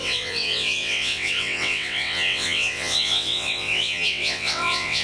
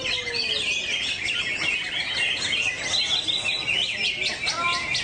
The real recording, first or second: second